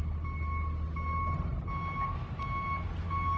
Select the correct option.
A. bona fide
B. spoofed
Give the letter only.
A